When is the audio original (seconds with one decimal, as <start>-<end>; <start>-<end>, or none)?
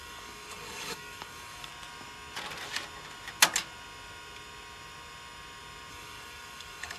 1.7-5.9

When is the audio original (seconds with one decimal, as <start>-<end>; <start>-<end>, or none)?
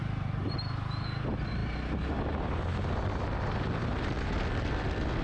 0.0-5.2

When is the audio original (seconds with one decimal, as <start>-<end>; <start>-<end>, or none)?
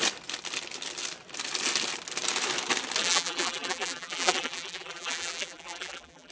0.0-3.0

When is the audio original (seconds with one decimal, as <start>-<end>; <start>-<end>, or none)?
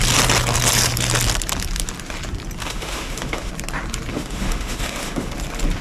0.0-2.6; 3.5-4.1; 5.3-5.8